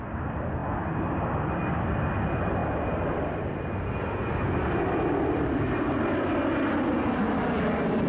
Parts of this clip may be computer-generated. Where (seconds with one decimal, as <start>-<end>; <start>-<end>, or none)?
none